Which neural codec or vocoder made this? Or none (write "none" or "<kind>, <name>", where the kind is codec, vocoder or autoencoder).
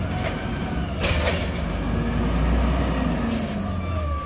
none